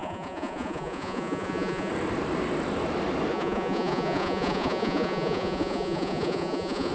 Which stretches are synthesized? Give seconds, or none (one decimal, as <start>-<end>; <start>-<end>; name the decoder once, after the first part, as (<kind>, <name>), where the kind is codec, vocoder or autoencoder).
0.0-1.9 (vocoder, Vocos); 3.3-6.9